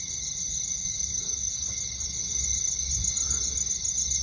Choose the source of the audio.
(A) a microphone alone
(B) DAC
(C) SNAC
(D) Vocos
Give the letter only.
A